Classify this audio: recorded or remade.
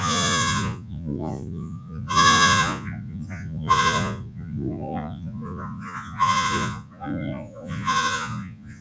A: remade